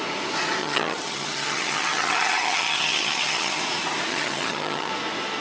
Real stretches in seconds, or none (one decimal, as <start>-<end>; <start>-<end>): 0.0-0.6; 3.6-4.1; 4.9-5.4